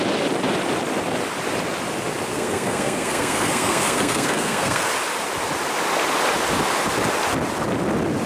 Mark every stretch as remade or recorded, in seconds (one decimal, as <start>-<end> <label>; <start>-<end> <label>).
0.0-2.3 recorded; 2.3-4.9 remade; 4.9-8.3 recorded